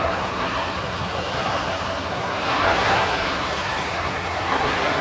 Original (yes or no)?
no